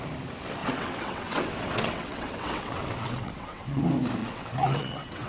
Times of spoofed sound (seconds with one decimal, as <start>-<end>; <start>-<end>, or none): 0.6-3.8; 4.2-5.3